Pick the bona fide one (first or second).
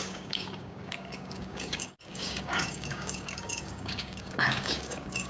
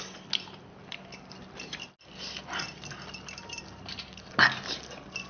second